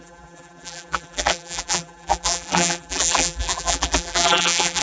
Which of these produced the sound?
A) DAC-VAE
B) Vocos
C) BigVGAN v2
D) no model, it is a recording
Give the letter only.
C